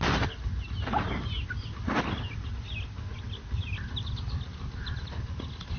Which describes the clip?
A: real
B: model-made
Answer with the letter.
A